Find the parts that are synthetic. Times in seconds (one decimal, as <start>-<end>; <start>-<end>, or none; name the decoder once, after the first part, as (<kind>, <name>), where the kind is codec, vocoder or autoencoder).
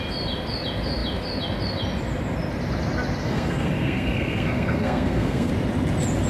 3.2-5.5 (codec, SNAC)